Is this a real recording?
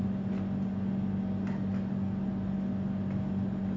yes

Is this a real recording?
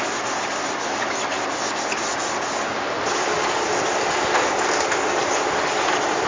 yes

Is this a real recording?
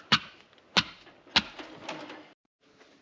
yes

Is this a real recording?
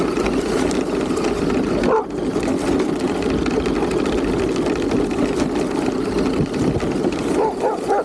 yes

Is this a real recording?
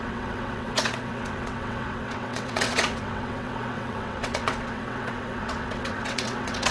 no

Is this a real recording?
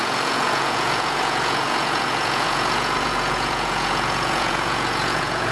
no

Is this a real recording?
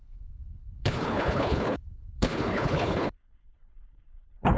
no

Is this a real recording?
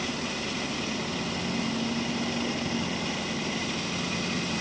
yes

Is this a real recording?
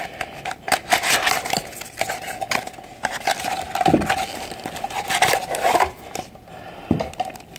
yes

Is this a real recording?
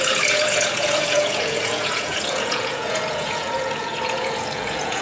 no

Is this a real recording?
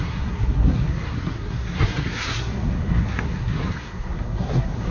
no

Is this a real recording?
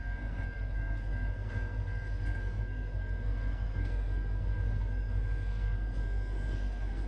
no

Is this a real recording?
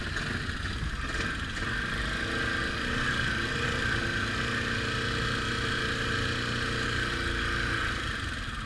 yes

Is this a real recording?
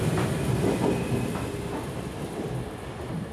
yes